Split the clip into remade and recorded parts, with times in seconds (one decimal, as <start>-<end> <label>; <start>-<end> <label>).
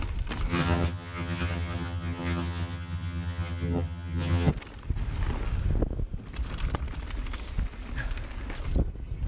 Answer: 0.0-0.5 recorded; 0.5-4.5 remade; 4.5-9.3 recorded